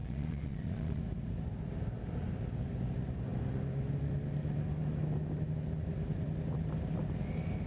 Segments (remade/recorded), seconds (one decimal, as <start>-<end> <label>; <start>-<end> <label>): 0.0-1.0 remade; 1.0-7.7 recorded